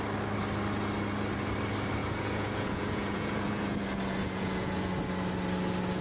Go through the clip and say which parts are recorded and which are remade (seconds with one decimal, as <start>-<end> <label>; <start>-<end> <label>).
0.0-2.0 recorded; 2.0-3.8 remade; 3.8-4.2 recorded; 4.2-4.9 remade; 4.9-6.0 recorded